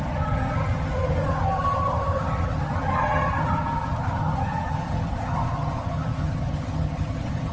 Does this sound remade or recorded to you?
remade